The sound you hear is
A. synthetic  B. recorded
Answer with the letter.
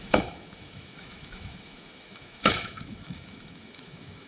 A